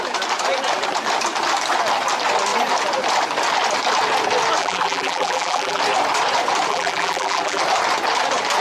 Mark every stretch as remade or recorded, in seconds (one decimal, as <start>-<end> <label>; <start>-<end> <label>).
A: 0.0-4.6 recorded; 4.6-5.8 remade; 5.8-6.7 recorded; 6.7-7.6 remade; 7.6-8.6 recorded